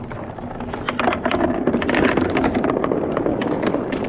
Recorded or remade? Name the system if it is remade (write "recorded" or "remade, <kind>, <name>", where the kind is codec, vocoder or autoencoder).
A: recorded